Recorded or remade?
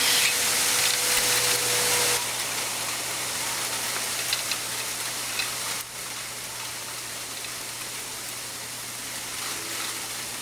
recorded